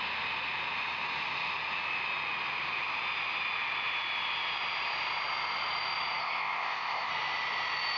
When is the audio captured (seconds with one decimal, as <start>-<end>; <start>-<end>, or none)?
0.0-6.2; 7.1-8.0